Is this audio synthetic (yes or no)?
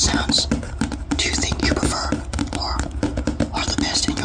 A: no